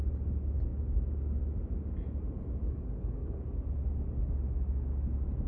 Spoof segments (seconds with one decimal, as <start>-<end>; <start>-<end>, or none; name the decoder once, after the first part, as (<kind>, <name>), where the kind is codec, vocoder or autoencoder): 2.6-3.4 (codec, HILCodec)